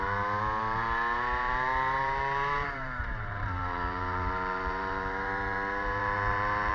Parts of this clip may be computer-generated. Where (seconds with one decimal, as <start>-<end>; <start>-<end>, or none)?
0.0-6.7